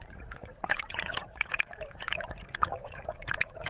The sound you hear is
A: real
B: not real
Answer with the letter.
B